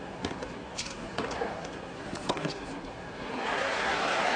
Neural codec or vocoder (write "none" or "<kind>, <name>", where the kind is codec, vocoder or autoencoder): codec, SNAC